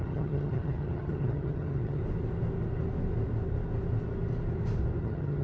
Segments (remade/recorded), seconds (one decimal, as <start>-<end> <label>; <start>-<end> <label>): 0.0-2.0 remade; 2.0-5.0 recorded; 5.0-5.4 remade